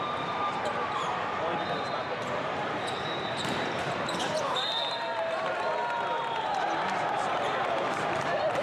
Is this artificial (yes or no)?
yes